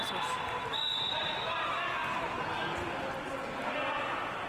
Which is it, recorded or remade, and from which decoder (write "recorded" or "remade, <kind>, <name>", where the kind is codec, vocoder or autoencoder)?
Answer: recorded